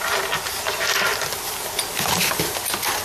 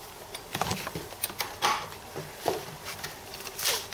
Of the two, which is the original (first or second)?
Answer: first